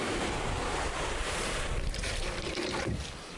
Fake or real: fake